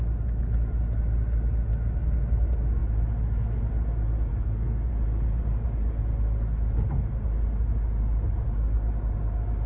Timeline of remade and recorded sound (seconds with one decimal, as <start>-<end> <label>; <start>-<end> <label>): 0.0-4.3 recorded; 4.3-4.9 remade; 4.9-9.7 recorded